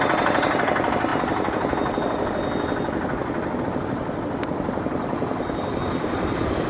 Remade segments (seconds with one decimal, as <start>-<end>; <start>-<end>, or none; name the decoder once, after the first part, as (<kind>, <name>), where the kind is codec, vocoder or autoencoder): none